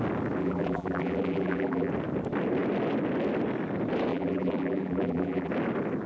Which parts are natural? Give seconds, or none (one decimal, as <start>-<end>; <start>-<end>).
0.0-0.4; 1.9-4.1; 5.5-6.1